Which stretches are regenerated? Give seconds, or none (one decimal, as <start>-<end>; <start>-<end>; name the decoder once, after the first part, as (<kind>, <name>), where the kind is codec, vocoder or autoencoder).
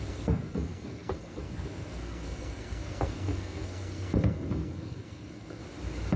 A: 0.0-5.6 (codec, SNAC)